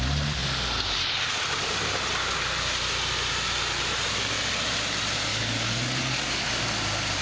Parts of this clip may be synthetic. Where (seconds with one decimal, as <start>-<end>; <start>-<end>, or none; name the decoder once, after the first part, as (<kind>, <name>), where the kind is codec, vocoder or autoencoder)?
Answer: 5.3-6.4 (codec, DAC)